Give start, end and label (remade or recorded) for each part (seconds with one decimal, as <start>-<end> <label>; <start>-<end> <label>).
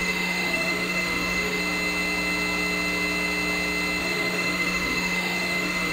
0.0-1.6 remade; 1.6-4.0 recorded; 4.0-5.9 remade